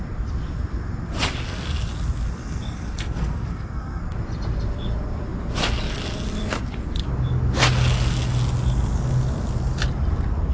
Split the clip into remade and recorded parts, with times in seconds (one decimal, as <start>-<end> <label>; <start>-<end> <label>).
0.0-2.4 recorded; 2.4-4.0 remade; 4.0-10.5 recorded